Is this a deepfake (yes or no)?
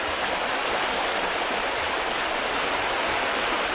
no